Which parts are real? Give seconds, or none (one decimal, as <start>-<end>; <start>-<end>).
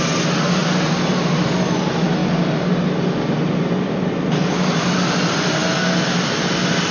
0.6-1.1; 2.2-3.0; 5.6-6.9